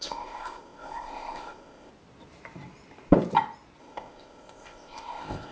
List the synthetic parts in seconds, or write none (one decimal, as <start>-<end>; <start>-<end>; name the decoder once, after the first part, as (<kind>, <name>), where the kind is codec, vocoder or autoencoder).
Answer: 0.0-1.9 (codec, ZipCodec); 3.8-5.5